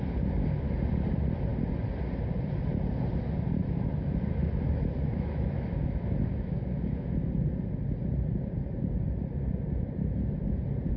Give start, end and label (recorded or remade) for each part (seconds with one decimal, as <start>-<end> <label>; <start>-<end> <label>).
0.0-3.6 recorded; 3.6-7.3 remade; 7.3-11.0 recorded